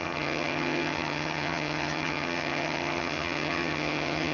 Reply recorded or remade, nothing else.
remade